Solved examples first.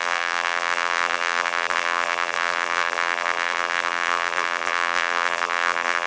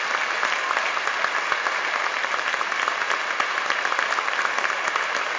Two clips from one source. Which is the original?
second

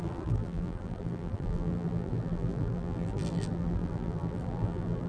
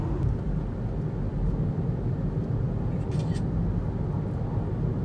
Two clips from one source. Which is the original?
second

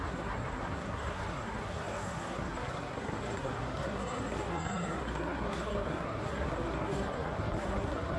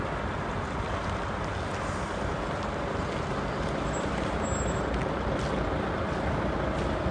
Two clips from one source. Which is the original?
second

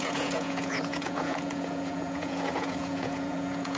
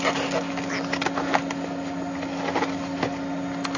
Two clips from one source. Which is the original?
second